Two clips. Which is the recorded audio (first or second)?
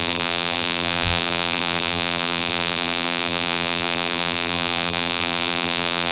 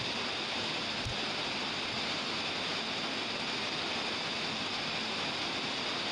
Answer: second